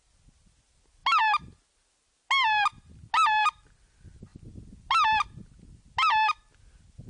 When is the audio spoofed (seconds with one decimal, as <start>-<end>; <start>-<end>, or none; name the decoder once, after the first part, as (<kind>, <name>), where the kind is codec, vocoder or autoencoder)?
none